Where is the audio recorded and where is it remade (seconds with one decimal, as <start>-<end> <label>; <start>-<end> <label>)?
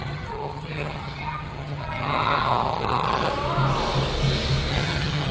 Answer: 0.0-3.3 remade; 3.3-4.7 recorded; 4.7-5.3 remade